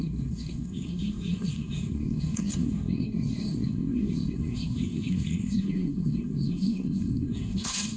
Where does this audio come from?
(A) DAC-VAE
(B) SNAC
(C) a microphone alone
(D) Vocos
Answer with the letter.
B